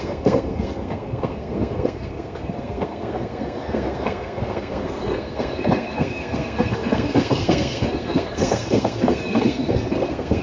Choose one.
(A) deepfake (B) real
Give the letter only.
A